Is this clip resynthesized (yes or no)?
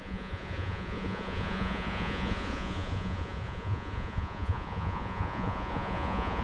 yes